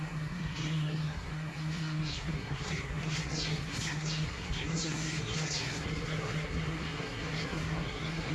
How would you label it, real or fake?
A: fake